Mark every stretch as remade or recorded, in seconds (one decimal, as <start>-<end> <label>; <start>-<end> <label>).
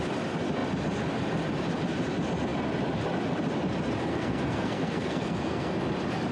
0.0-4.1 recorded; 4.1-5.8 remade; 5.8-6.3 recorded